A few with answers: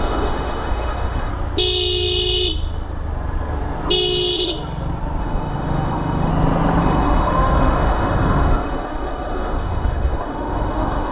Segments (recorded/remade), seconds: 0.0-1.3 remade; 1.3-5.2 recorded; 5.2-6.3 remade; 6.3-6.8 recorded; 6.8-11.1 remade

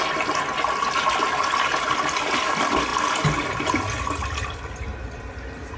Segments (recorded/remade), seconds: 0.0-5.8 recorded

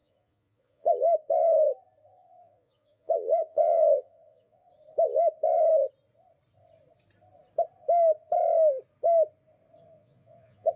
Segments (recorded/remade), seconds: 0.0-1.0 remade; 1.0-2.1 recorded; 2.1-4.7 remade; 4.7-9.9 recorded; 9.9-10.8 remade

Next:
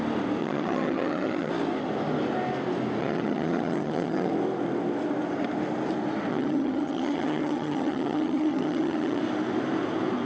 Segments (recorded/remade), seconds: 0.0-0.4 recorded; 0.4-1.5 remade; 1.5-3.0 recorded; 3.0-4.3 remade; 4.3-6.3 recorded; 6.3-9.2 remade; 9.2-10.3 recorded

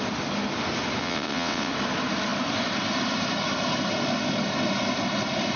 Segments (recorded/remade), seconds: 0.0-1.0 recorded; 1.0-1.7 remade; 1.7-5.6 recorded

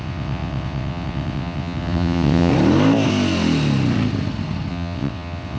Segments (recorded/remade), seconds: 0.0-2.5 remade; 2.5-4.7 recorded; 4.7-5.6 remade